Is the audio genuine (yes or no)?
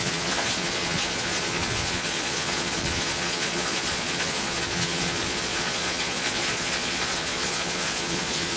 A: no